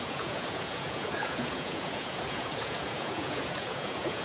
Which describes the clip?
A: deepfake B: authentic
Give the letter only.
A